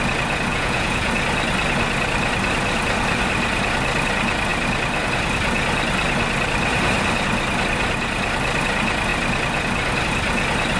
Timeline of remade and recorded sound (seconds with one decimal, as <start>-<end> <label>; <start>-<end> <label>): 0.0-0.5 recorded; 0.5-1.1 remade; 1.1-10.8 recorded